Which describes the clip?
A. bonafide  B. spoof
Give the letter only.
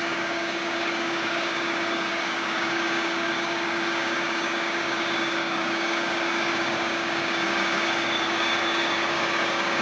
B